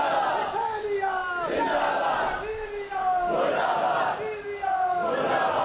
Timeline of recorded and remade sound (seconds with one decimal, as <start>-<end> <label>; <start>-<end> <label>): 0.0-5.6 recorded